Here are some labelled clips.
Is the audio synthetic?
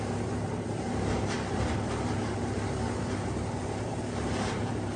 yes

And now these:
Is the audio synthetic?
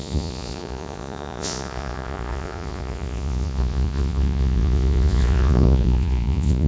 yes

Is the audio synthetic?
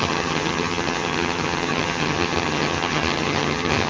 yes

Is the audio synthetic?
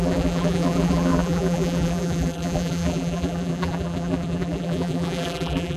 yes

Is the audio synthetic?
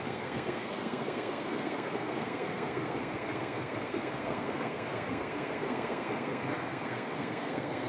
yes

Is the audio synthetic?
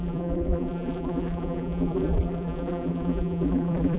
yes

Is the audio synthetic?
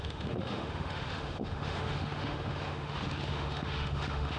yes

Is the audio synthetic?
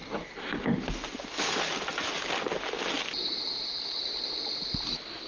no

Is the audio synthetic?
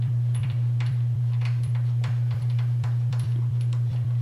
yes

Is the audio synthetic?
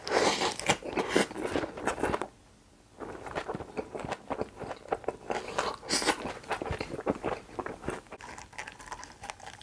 no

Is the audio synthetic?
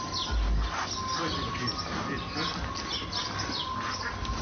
no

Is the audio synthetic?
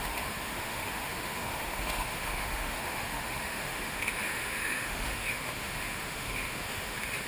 yes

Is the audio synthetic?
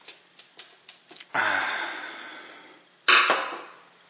no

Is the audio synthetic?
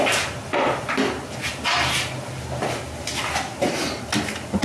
no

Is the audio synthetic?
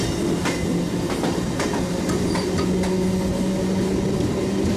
no